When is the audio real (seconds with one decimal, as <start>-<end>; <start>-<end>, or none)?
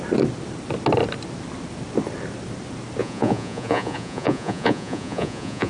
0.0-3.0